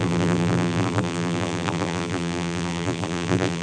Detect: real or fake fake